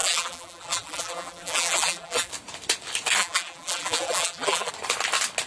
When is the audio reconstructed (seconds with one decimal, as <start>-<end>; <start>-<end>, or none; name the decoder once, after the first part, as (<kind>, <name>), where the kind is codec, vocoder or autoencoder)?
0.0-2.3 (vocoder, BigVGAN v2); 3.2-4.7

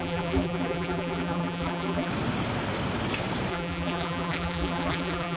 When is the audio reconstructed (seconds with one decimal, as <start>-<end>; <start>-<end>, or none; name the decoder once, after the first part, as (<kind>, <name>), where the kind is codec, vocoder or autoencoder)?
0.0-2.1 (vocoder, BigVGAN v2); 3.5-5.4

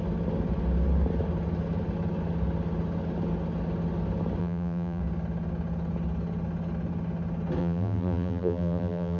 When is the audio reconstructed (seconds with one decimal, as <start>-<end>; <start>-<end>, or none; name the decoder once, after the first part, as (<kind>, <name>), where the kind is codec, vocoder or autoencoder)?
4.4-5.0 (vocoder, BigVGAN v2); 7.6-9.2

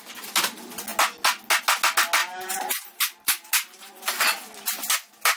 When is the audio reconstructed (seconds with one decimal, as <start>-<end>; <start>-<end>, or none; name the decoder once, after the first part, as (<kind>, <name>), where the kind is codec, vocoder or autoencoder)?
2.2-3.9 (vocoder, BigVGAN v2)

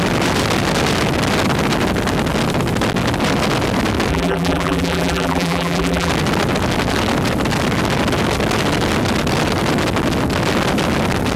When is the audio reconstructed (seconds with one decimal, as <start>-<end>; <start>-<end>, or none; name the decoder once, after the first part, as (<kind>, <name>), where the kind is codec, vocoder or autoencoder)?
4.1-6.1 (vocoder, BigVGAN v2)

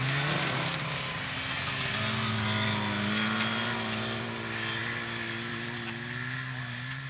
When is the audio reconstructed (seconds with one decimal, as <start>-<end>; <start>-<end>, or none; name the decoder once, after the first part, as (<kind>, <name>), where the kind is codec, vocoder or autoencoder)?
none

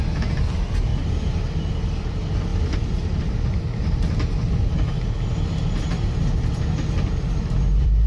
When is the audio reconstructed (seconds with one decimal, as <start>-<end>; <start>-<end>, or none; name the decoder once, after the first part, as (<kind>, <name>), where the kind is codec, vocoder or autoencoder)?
0.0-0.9 (vocoder, BigVGAN v2); 1.9-2.5; 7.4-8.1

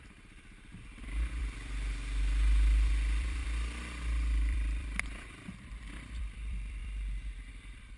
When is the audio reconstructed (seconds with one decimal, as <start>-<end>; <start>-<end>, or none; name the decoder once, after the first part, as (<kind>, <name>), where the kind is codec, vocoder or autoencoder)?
0.0-0.7 (vocoder, BigVGAN v2); 1.4-8.0